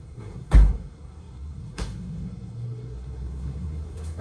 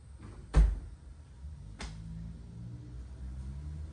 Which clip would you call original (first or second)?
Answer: second